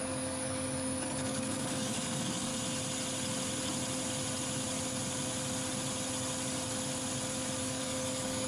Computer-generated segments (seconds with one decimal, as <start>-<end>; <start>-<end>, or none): 0.0-2.5; 7.6-8.5